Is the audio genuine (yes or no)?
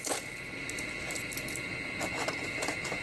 yes